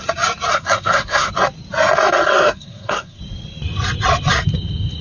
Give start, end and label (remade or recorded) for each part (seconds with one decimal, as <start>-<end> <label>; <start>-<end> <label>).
0.0-0.5 recorded; 0.5-1.3 remade; 1.3-2.4 recorded; 2.4-3.2 remade; 3.2-5.0 recorded